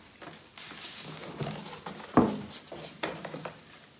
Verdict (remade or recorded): recorded